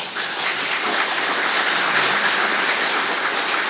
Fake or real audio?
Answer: real